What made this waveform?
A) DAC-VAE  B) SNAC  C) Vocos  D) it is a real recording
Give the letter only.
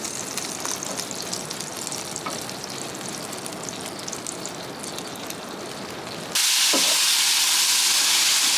D